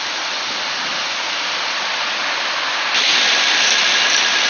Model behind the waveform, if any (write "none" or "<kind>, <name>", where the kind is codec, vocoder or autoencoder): none